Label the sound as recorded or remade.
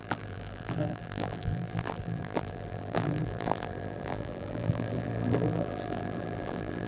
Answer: remade